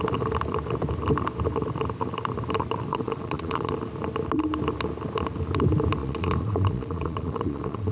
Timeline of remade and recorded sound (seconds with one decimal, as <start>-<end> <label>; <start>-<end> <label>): 0.0-2.9 recorded; 2.9-3.7 remade; 3.7-6.0 recorded; 6.0-7.9 remade